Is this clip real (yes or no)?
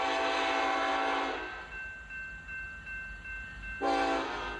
yes